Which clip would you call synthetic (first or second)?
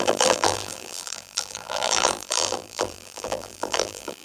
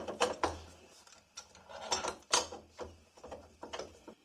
first